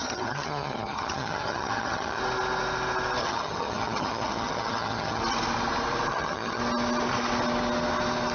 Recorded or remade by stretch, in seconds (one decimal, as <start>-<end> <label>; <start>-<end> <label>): 0.0-2.2 remade; 2.2-3.2 recorded; 3.2-5.2 remade; 5.2-6.1 recorded; 6.1-6.6 remade; 6.6-8.3 recorded